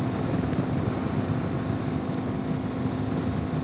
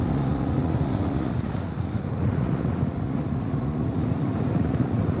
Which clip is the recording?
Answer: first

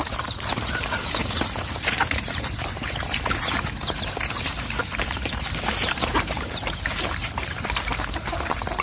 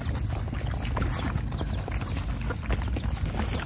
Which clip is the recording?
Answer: second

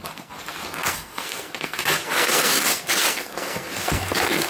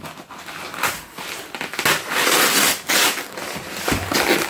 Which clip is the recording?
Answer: second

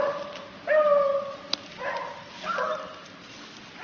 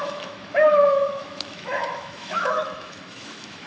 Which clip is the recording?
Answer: first